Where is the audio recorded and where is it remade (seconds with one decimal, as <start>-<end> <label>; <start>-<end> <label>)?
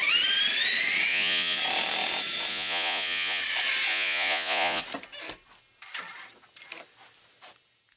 0.0-1.1 recorded; 1.1-1.6 remade; 1.6-2.5 recorded; 2.5-3.4 remade; 3.4-3.9 recorded; 3.9-4.8 remade; 4.8-8.0 recorded